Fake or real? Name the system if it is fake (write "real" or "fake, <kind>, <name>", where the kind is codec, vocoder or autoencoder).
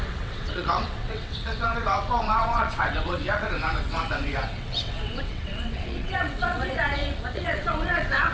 fake, vocoder, WaveNeXt